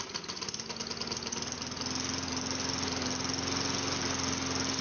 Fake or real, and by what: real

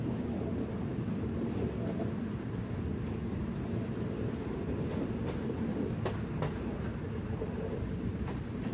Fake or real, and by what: real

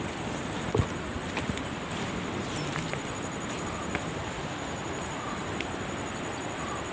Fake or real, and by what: real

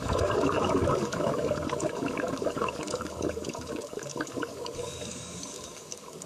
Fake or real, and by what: fake, codec, DAC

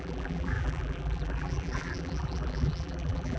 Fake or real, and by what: fake, vocoder, BigVGAN v2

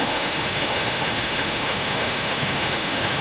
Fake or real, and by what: fake, autoencoder, DAC-VAE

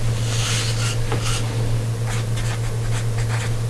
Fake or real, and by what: real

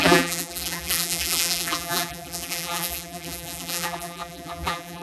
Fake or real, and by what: fake, vocoder, BigVGAN v2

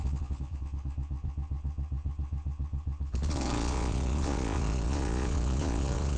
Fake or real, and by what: fake, vocoder, Vocos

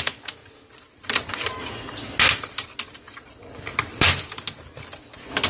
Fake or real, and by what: real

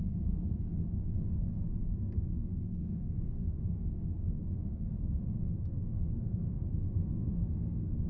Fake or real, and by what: fake, codec, SNAC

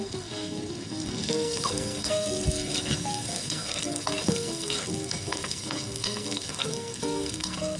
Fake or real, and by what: fake, codec, SNAC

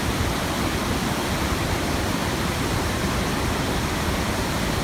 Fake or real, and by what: real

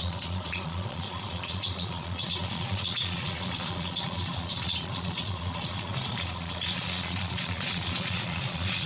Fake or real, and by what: fake, vocoder, Vocos